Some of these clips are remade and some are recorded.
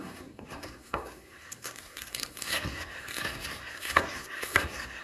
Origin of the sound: remade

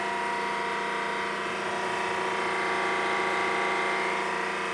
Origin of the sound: recorded